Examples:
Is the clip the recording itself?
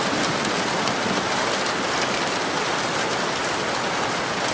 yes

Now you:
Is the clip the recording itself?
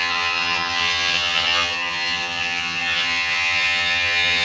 no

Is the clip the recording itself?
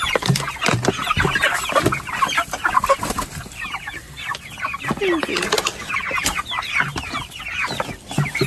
yes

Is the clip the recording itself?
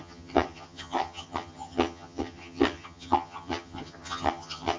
no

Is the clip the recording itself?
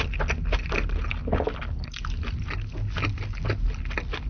yes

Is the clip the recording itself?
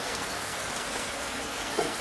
no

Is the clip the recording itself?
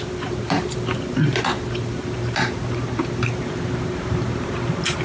no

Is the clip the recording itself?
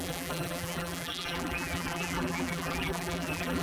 no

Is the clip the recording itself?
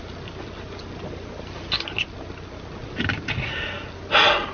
yes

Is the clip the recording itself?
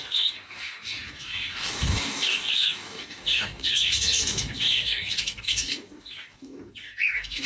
no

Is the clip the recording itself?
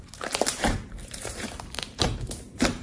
no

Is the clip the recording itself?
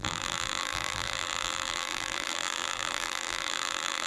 no